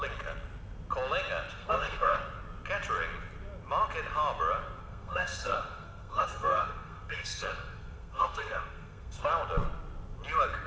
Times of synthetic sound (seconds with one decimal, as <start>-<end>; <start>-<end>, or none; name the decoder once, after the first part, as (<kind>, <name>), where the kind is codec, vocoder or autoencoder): 1.5-2.2 (codec, SNAC); 4.8-9.3